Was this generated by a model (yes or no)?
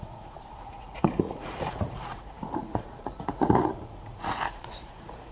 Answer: yes